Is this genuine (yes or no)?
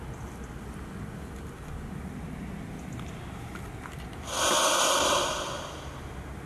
yes